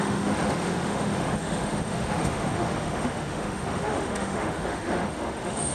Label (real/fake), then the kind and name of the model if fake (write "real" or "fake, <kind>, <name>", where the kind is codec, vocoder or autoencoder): fake, autoencoder, DAC-VAE